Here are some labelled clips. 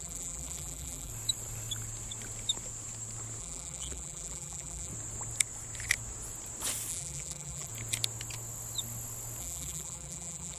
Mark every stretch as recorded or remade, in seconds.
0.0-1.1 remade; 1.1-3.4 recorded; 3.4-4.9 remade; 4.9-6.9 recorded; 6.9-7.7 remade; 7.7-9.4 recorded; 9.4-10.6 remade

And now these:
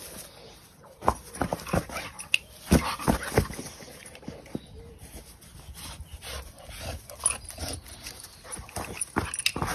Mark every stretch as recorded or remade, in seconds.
0.0-4.0 recorded; 4.0-4.8 remade; 4.8-9.7 recorded

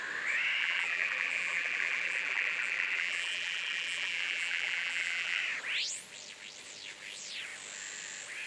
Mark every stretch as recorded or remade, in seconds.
0.0-0.6 recorded; 0.6-5.4 remade; 5.4-8.5 recorded

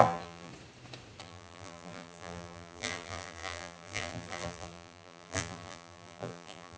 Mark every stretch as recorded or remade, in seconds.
0.0-0.5 remade; 0.5-1.2 recorded; 1.2-6.8 remade

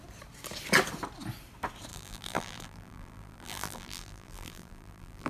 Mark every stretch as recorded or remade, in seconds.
0.0-1.9 recorded; 1.9-5.3 remade

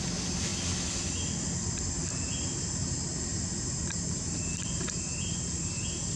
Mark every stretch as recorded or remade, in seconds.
0.0-2.0 recorded; 2.0-2.7 remade; 2.7-3.3 recorded; 3.3-6.2 remade

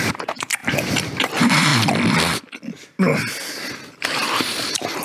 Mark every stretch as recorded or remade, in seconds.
0.0-0.6 remade; 0.6-1.2 recorded; 1.2-1.7 remade; 1.7-3.7 recorded; 3.7-5.0 remade